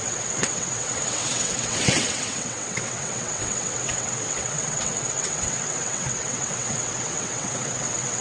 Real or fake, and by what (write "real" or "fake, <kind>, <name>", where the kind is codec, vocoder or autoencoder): fake, vocoder, WaveNeXt